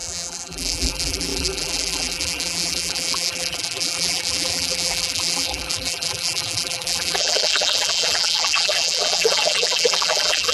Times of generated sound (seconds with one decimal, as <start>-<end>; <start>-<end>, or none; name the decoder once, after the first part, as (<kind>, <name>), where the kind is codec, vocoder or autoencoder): 0.0-10.5 (vocoder, BigVGAN v2)